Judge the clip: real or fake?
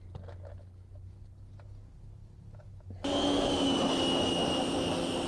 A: real